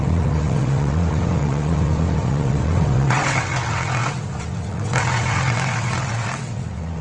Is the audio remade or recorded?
remade